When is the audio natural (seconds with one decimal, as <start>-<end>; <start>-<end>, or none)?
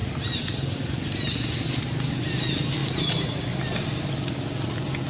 0.0-5.1